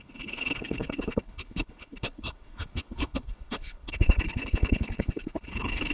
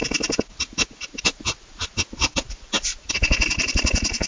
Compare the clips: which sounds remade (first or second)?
first